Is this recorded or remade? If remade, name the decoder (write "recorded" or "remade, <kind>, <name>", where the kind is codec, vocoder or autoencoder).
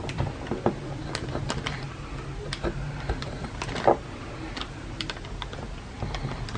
recorded